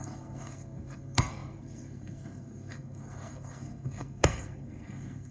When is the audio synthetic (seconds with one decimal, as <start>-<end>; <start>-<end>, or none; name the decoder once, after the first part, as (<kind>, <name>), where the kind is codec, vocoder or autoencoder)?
0.0-5.3 (codec, SNAC)